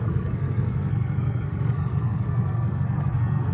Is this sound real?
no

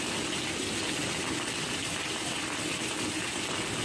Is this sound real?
yes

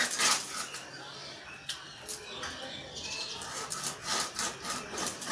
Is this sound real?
yes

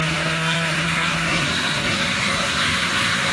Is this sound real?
no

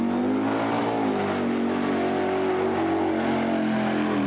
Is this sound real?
yes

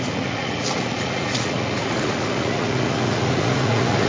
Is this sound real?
no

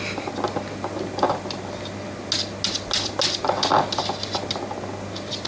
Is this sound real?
yes